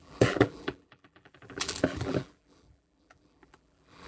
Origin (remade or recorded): remade